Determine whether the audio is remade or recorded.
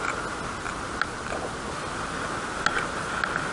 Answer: recorded